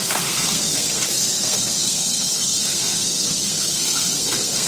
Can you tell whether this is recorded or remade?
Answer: remade